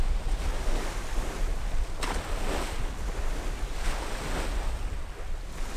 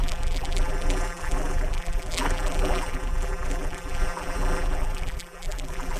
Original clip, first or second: first